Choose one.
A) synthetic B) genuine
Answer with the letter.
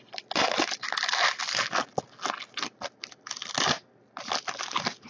B